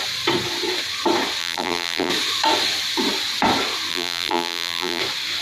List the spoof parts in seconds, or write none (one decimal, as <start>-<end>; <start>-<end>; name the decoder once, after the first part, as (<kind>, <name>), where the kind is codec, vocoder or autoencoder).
1.4-2.1 (vocoder, BigVGAN v2); 3.9-5.0